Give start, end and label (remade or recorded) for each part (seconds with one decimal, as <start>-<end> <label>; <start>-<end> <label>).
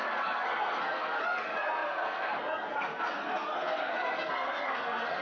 0.0-5.2 remade